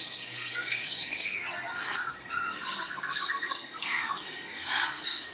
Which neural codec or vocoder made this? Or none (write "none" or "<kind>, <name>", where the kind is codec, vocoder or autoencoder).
codec, SNAC